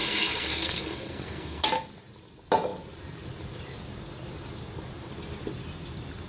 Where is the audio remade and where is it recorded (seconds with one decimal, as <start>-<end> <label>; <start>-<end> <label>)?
0.0-1.7 remade; 1.7-6.3 recorded

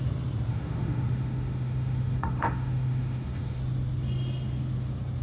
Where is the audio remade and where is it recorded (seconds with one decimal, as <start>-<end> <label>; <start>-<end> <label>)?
0.0-0.5 recorded; 0.5-3.6 remade; 3.6-5.2 recorded

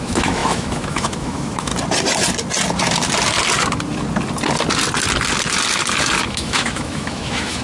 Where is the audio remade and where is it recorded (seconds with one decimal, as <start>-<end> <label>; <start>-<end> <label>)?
0.0-1.7 remade; 1.7-6.2 recorded; 6.2-7.6 remade

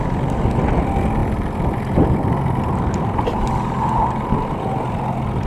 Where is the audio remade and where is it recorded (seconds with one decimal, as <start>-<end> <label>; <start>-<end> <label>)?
0.0-1.2 recorded; 1.2-4.5 remade; 4.5-5.5 recorded

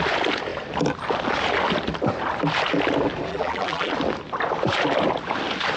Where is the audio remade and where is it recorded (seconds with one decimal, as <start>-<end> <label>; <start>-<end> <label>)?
0.0-3.3 recorded; 3.3-3.9 remade; 3.9-5.8 recorded